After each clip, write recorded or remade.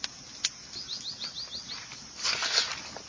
recorded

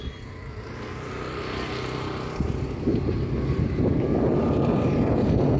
recorded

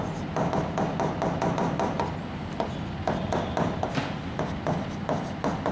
recorded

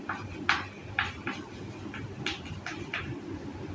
recorded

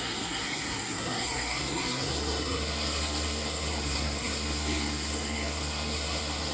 remade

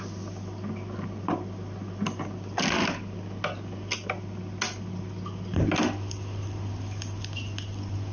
recorded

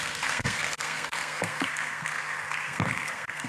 remade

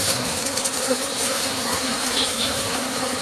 remade